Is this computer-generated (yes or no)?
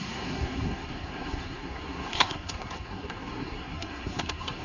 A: yes